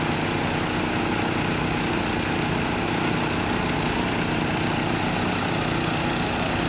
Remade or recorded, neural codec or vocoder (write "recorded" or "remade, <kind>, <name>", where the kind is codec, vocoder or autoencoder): recorded